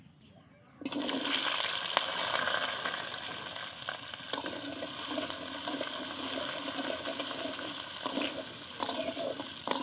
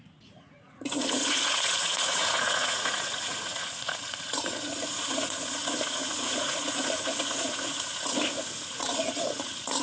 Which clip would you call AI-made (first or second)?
second